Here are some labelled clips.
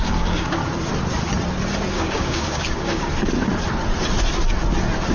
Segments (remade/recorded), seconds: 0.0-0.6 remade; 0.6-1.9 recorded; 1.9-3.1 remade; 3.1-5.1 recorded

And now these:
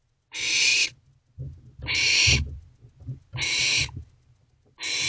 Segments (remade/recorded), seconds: 0.0-5.1 recorded

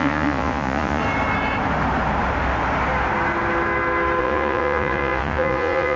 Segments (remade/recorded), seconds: 0.0-1.0 remade; 1.0-4.2 recorded; 4.2-6.0 remade

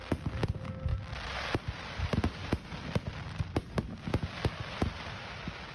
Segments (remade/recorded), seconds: 0.0-5.7 recorded